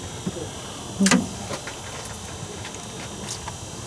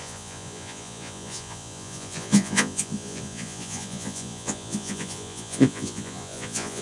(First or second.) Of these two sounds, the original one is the first